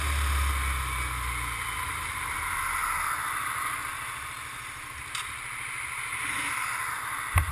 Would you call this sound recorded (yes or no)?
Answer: yes